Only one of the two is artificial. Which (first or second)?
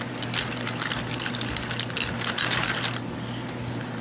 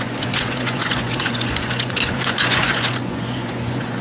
second